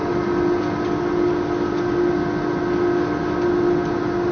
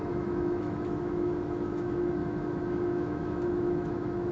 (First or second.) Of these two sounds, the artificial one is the second